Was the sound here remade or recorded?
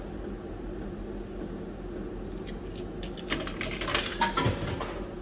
recorded